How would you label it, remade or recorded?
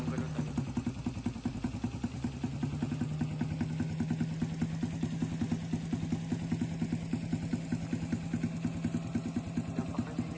recorded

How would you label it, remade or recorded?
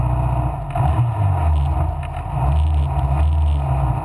recorded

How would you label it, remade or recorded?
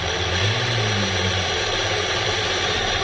recorded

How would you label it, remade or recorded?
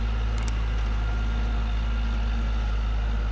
recorded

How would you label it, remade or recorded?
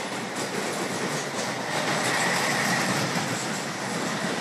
recorded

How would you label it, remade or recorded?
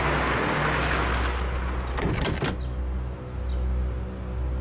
recorded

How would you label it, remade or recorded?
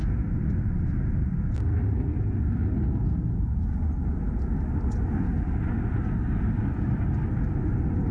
recorded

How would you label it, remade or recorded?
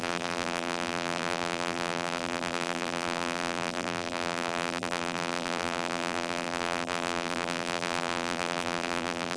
remade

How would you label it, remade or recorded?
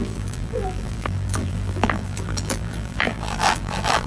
remade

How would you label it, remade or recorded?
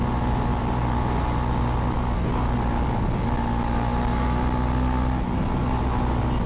recorded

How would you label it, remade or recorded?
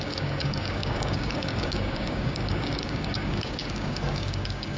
remade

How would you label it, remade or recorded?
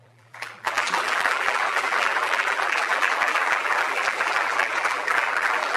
remade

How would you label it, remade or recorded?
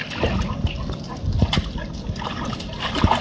recorded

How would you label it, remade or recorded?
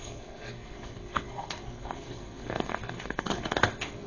remade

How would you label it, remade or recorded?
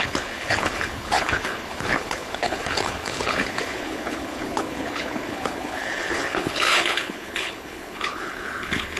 remade